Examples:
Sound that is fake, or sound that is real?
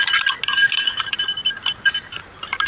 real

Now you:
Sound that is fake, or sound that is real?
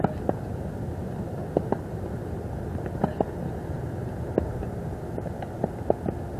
real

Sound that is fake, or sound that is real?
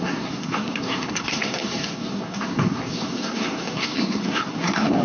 fake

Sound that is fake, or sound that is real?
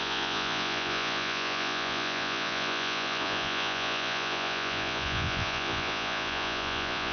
fake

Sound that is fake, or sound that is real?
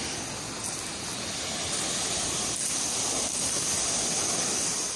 real